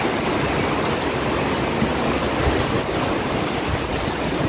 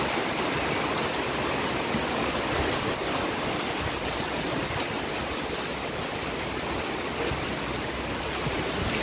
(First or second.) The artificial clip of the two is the second